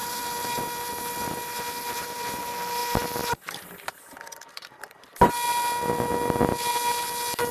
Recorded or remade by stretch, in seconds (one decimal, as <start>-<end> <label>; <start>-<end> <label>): 0.0-2.4 remade; 2.4-2.8 recorded; 2.8-5.3 remade; 5.3-7.5 recorded